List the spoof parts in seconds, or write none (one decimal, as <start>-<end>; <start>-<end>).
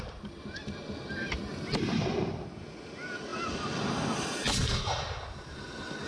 none